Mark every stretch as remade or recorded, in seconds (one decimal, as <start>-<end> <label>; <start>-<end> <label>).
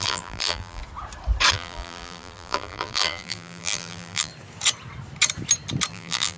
0.0-0.8 remade; 0.8-1.5 recorded; 1.5-4.3 remade; 4.3-5.9 recorded; 5.9-6.4 remade